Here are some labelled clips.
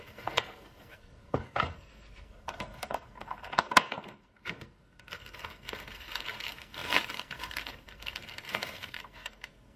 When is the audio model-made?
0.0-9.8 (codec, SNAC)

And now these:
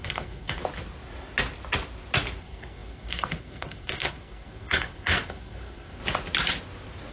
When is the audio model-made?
0.0-0.6 (codec, SNAC); 2.4-6.0

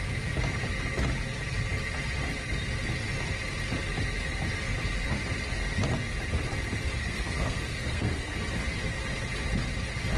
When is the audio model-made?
7.0-8.3 (codec, SNAC)

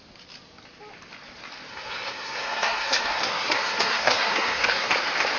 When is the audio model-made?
1.7-4.9 (codec, SNAC)

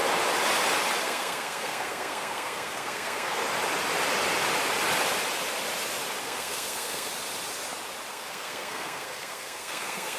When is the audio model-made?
1.0-3.4 (codec, SNAC); 6.2-7.1; 8.1-10.2

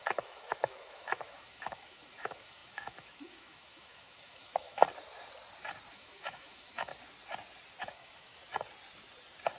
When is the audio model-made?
0.0-4.8 (autoencoder, DAC-VAE); 5.9-6.9; 7.8-8.4

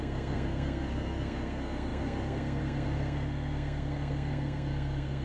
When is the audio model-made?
0.0-5.2 (codec, SNAC)

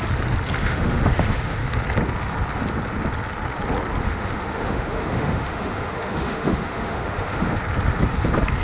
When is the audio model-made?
0.6-1.6 (autoencoder, DAC-VAE); 4.0-7.6